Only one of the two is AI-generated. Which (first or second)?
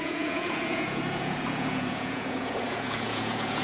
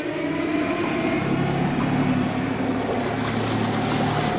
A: first